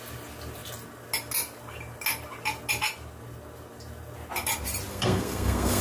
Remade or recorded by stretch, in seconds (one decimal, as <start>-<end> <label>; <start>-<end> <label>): 0.0-4.9 recorded; 4.9-5.8 remade